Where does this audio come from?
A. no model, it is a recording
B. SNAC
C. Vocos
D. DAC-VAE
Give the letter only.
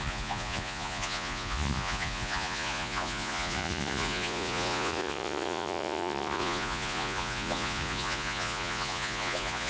C